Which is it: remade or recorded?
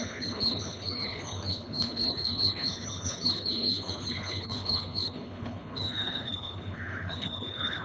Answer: remade